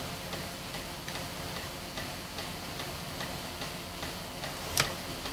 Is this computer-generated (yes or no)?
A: no